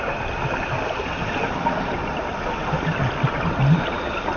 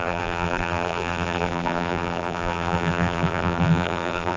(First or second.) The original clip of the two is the first